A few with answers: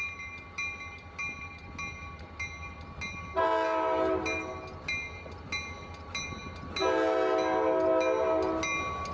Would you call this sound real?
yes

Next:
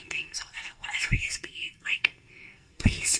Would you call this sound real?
no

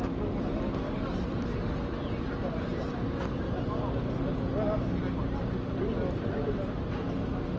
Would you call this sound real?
yes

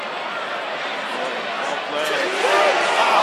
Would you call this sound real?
yes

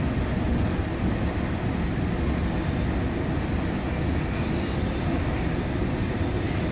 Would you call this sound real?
yes